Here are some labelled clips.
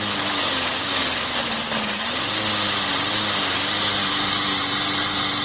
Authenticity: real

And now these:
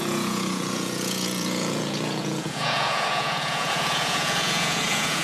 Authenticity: fake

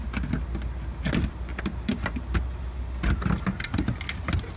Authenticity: real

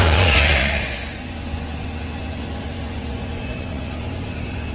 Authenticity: fake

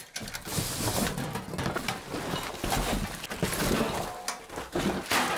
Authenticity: real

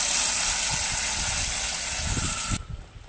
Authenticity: real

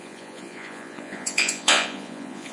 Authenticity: fake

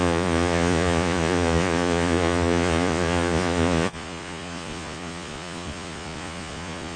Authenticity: fake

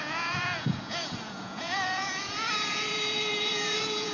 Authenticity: fake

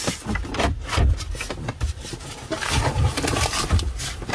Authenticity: real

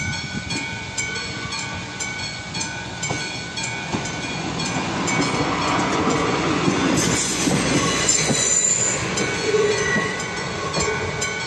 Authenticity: fake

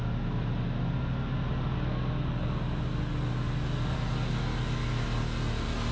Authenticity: real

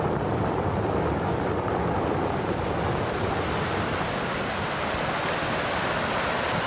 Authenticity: real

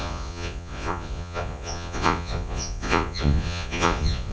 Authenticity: fake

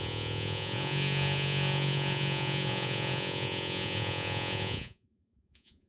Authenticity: fake